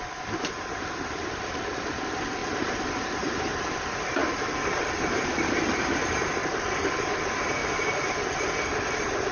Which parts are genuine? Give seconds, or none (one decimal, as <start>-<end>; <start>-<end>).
4.2-5.8; 7.6-8.9